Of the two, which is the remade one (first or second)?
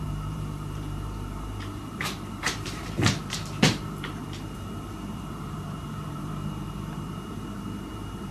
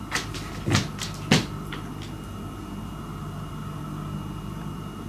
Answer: first